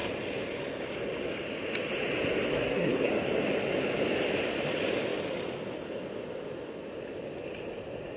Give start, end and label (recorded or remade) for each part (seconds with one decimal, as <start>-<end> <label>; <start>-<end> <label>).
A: 0.0-2.5 recorded; 2.5-3.1 remade; 3.1-8.2 recorded